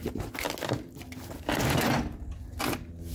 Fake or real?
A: real